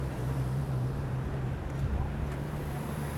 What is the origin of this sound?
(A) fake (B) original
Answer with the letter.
A